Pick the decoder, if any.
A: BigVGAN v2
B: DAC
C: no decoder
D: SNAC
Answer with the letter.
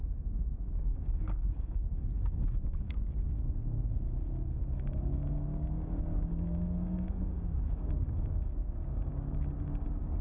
B